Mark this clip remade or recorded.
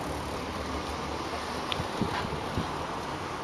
recorded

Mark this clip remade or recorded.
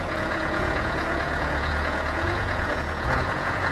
remade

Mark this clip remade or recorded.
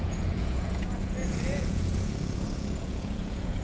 remade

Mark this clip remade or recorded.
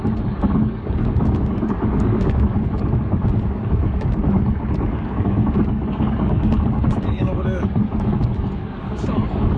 remade